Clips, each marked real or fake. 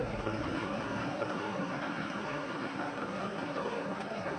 fake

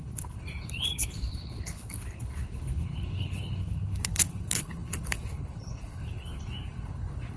fake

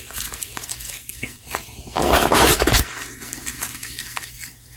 fake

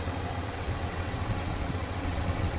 fake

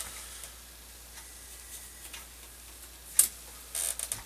real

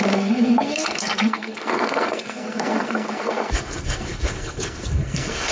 fake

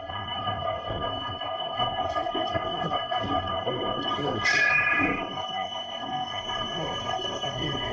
fake